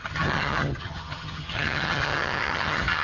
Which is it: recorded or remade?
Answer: remade